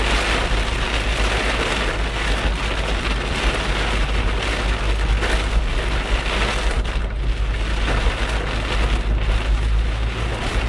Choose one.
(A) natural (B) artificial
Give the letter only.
A